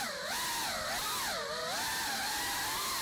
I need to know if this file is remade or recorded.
recorded